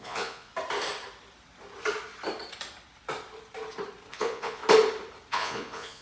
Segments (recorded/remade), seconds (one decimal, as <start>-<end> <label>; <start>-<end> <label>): 0.0-0.5 remade; 0.5-4.1 recorded; 4.1-4.6 remade; 4.6-5.3 recorded; 5.3-6.0 remade